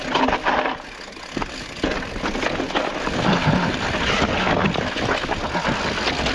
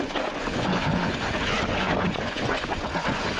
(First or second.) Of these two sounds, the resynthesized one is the second